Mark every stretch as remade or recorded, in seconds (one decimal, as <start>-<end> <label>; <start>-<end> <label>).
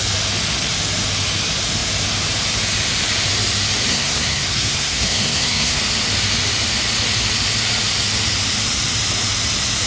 0.0-3.9 recorded; 3.9-5.8 remade; 5.8-9.9 recorded